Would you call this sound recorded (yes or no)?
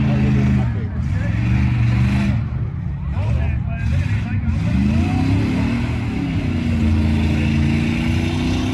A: yes